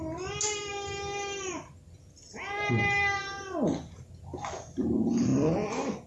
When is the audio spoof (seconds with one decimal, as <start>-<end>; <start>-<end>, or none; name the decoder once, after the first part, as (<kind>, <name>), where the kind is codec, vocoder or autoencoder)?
none